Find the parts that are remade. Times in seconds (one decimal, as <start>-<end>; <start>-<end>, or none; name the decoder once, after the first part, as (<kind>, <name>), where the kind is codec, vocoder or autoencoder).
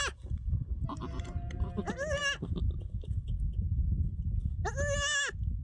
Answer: none